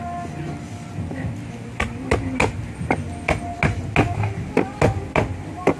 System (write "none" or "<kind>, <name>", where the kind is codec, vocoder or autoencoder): none